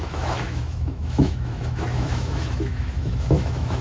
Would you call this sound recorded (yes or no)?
no